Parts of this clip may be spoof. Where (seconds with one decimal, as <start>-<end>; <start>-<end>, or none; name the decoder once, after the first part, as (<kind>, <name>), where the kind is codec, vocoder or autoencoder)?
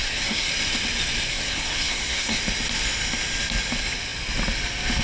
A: 0.0-0.5 (codec, SNAC); 1.3-2.4